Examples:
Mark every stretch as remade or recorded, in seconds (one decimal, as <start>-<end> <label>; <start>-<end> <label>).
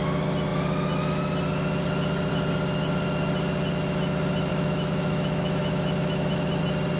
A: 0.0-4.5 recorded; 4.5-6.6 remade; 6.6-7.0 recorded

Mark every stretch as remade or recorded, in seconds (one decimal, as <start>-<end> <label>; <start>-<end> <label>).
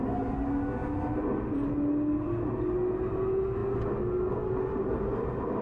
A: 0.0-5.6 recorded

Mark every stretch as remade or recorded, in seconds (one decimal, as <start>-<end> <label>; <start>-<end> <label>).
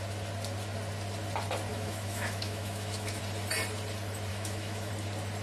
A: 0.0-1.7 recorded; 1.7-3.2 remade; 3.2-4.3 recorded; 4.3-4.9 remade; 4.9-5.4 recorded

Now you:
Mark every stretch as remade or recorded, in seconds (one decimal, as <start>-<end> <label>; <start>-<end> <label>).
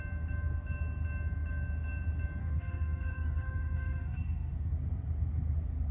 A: 0.0-2.4 recorded; 2.4-4.7 remade; 4.7-5.9 recorded